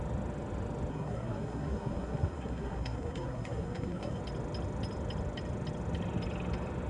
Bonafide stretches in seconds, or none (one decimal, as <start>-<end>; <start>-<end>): 0.0-0.9; 4.2-6.9